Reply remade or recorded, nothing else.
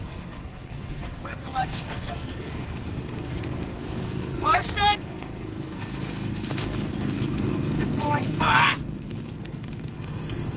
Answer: remade